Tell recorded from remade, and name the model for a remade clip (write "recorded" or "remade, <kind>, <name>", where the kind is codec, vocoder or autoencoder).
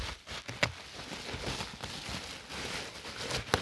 recorded